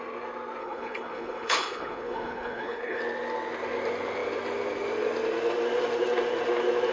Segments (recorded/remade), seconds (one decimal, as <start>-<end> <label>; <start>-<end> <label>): 0.0-0.6 recorded; 0.6-3.0 remade; 3.0-6.9 recorded